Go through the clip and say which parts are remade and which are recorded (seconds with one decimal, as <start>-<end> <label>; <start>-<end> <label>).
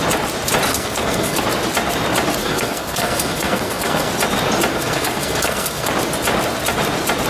0.0-0.7 recorded; 0.7-1.4 remade; 1.4-2.4 recorded; 2.4-4.1 remade; 4.1-4.7 recorded; 4.7-5.9 remade; 5.9-7.3 recorded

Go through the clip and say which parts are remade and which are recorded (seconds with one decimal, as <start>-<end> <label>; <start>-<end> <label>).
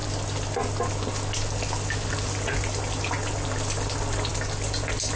0.0-5.2 recorded